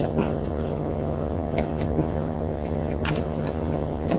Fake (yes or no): yes